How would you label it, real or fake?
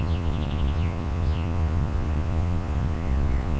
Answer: fake